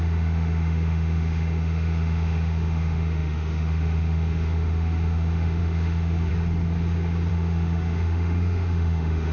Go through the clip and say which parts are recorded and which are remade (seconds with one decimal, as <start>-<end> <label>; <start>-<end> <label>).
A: 0.0-6.3 remade; 6.3-7.3 recorded; 7.3-9.3 remade